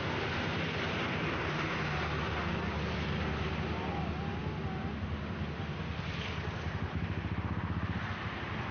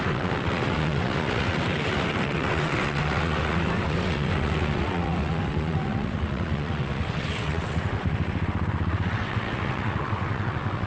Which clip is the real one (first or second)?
first